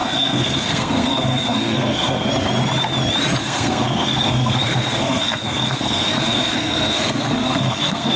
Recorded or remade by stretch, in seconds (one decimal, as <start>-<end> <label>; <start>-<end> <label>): 0.0-2.3 remade; 2.3-3.4 recorded; 3.4-8.2 remade